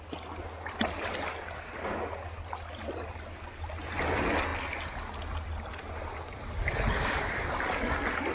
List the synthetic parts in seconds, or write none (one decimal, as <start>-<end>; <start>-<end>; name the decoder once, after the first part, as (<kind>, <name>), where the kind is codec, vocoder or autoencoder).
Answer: none